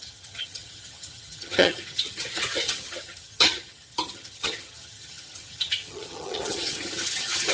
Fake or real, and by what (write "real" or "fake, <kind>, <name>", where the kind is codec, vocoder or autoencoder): fake, vocoder, HiFi-GAN